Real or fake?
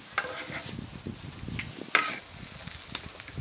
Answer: real